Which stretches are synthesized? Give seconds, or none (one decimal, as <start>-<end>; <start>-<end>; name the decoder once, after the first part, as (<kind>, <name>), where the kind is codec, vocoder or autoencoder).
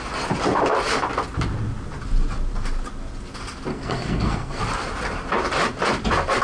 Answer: 3.7-4.6 (codec, SNAC)